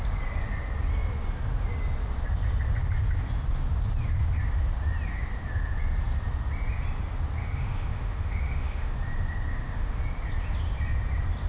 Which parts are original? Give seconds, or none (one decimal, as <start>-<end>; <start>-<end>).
0.0-7.4; 8.9-9.5; 10.0-11.5